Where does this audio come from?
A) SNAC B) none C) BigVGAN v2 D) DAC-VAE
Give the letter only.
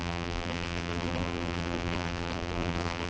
C